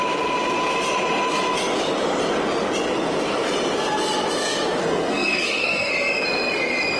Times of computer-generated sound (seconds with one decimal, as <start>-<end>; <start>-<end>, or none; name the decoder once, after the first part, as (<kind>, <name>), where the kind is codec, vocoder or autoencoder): 4.8-5.9 (codec, SNAC)